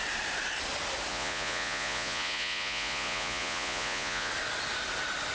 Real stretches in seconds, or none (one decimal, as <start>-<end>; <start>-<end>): 0.0-1.1; 4.3-5.3